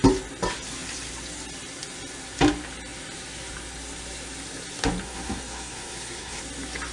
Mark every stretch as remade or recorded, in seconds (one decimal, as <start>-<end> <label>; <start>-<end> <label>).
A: 0.0-5.0 recorded; 5.0-6.4 remade; 6.4-6.9 recorded